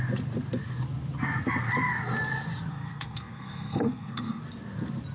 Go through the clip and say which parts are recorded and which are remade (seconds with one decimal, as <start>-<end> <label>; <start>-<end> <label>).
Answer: 0.0-2.7 recorded; 2.7-4.4 remade; 4.4-5.1 recorded